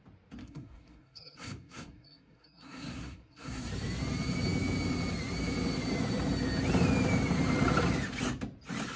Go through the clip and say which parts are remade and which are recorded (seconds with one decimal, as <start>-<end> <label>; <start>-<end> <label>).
0.0-0.4 recorded; 0.4-3.7 remade; 3.7-9.0 recorded